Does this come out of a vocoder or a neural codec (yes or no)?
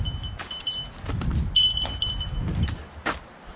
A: no